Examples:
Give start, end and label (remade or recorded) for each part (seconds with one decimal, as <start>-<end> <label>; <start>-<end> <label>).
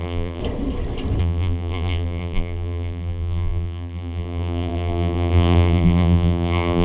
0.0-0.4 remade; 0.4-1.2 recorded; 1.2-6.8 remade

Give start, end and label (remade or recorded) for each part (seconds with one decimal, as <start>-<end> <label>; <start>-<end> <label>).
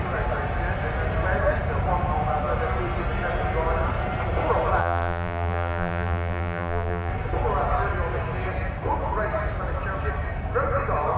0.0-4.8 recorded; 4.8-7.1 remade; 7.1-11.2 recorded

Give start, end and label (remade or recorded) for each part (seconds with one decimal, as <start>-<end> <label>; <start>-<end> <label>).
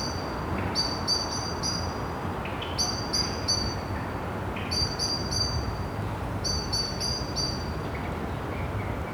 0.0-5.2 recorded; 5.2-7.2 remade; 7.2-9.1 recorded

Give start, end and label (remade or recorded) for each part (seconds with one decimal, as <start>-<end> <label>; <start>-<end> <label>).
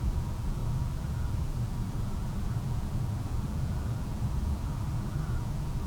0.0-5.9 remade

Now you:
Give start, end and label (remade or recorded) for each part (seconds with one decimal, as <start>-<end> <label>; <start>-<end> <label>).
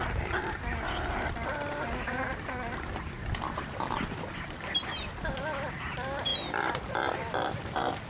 0.0-8.1 recorded